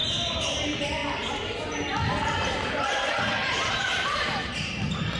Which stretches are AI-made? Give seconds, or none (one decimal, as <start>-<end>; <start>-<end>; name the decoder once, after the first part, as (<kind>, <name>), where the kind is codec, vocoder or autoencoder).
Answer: 0.0-1.0 (vocoder, BigVGAN v2); 3.7-5.2